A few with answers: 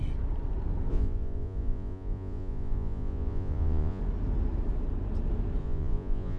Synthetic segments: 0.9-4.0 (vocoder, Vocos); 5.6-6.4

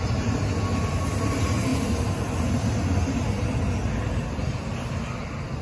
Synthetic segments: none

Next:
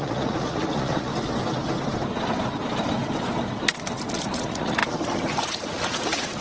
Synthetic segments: 0.0-1.1 (vocoder, Vocos); 4.2-4.8; 5.3-6.4

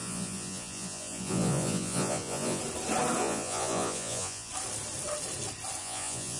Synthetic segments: 0.0-2.6 (vocoder, Vocos); 3.2-4.5; 5.8-6.4